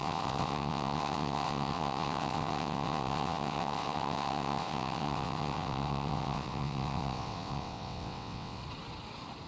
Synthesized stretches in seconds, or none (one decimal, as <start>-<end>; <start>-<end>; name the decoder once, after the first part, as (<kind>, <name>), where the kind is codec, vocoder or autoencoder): 0.0-8.6 (vocoder, WaveNeXt)